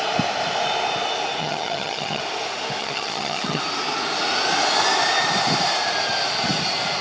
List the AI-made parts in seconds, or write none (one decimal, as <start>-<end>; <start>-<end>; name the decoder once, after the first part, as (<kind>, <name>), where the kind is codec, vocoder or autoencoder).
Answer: 1.4-2.2 (vocoder, HiFi-GAN); 2.8-3.6